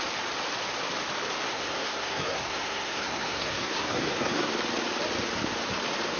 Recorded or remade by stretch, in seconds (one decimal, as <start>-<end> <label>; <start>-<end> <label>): 0.0-1.5 recorded; 1.5-4.5 remade; 4.5-6.2 recorded

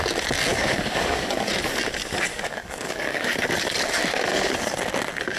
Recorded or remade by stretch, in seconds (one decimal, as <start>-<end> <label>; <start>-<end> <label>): 0.0-0.5 recorded; 0.5-1.5 remade; 1.5-2.3 recorded; 2.3-3.3 remade; 3.3-5.4 recorded

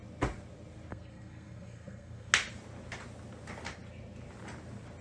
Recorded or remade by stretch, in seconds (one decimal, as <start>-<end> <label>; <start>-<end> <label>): 0.0-0.9 recorded; 0.9-2.3 remade; 2.3-5.0 recorded

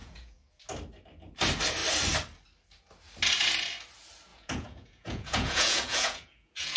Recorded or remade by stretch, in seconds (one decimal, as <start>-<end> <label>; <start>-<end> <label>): 0.0-0.6 remade; 0.6-4.3 recorded; 4.3-6.8 remade